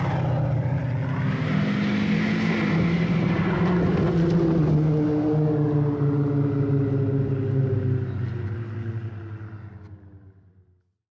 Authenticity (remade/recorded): recorded